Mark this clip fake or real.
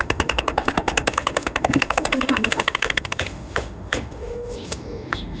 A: fake